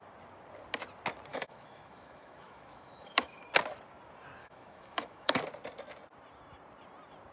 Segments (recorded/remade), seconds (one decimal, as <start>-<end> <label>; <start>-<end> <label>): 0.0-1.3 recorded; 1.3-3.4 remade; 3.4-4.4 recorded; 4.4-5.4 remade; 5.4-7.3 recorded